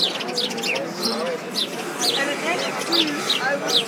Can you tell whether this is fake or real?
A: real